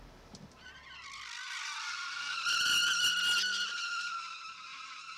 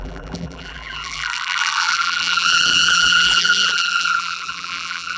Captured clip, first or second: first